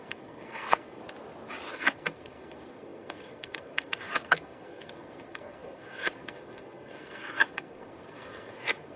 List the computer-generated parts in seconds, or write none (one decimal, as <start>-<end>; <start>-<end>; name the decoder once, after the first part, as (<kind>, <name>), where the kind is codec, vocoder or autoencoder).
0.0-1.0 (codec, SNAC); 1.7-9.0